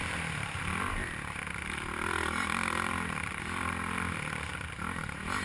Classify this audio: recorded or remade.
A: recorded